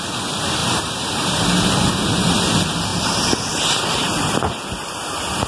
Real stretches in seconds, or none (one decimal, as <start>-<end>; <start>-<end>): 0.0-0.6; 1.4-2.9; 3.4-5.5